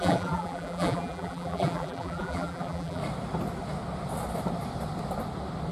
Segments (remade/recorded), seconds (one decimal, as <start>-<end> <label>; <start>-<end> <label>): 0.0-3.0 remade; 3.0-5.7 recorded